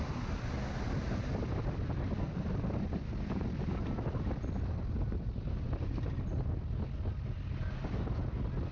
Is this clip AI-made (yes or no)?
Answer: no